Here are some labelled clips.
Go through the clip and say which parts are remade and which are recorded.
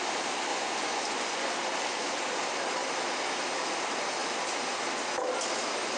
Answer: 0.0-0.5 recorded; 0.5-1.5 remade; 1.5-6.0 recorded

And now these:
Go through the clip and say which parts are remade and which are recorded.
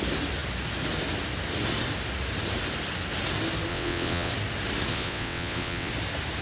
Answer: 0.0-3.7 recorded; 3.7-4.3 remade; 4.3-4.9 recorded; 4.9-5.9 remade; 5.9-6.4 recorded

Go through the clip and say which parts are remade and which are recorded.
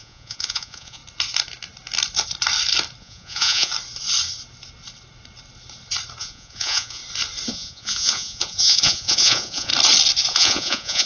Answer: 0.0-1.0 remade; 1.0-3.0 recorded; 3.0-3.7 remade; 3.7-6.2 recorded; 6.2-7.0 remade; 7.0-7.5 recorded; 7.5-9.7 remade; 9.7-10.3 recorded; 10.3-11.1 remade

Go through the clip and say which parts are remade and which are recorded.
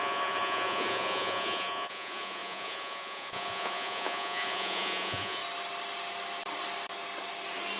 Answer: 0.0-5.4 remade; 5.4-7.8 recorded